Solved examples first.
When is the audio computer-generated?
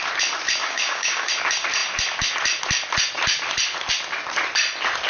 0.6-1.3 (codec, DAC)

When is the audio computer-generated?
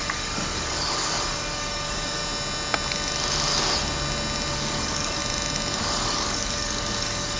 0.0-2.2 (codec, DAC); 4.5-5.2; 5.8-7.4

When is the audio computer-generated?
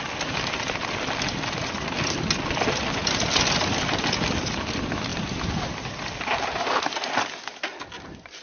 none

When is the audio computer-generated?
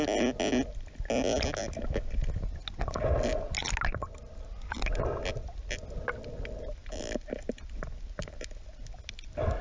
none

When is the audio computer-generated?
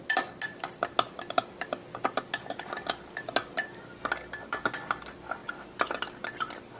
none